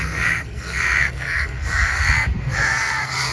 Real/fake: fake